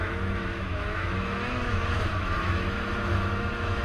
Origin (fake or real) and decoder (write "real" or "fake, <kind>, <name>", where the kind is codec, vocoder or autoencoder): fake, autoencoder, DAC-VAE